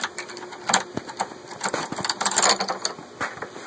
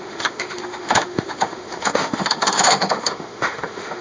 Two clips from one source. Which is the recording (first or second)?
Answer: first